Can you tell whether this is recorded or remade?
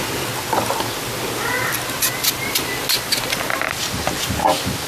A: recorded